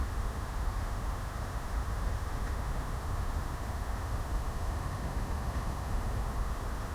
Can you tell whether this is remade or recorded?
remade